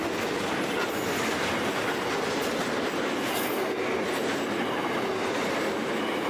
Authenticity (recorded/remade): recorded